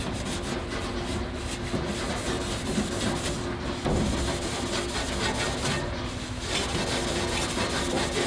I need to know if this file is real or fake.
real